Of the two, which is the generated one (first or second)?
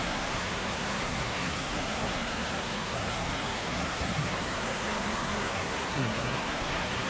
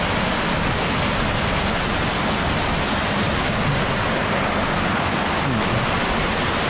first